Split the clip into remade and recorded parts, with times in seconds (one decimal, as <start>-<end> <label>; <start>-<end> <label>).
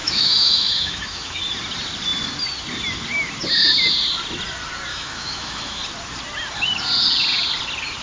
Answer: 0.0-1.4 remade; 1.4-4.9 recorded; 4.9-5.8 remade; 5.8-8.0 recorded